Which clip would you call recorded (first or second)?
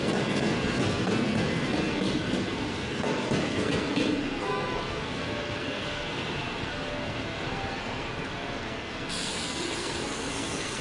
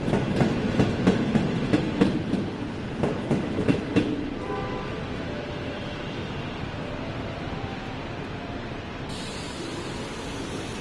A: second